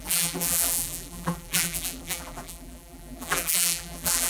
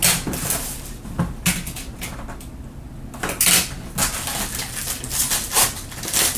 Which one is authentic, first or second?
second